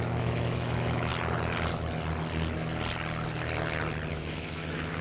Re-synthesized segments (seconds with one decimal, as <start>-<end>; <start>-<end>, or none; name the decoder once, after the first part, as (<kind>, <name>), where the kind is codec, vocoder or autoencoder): 0.0-1.1 (autoencoder, DAC-VAE); 4.1-5.0